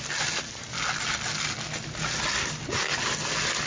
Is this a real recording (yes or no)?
yes